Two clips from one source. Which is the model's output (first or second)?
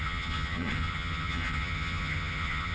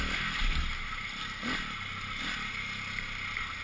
first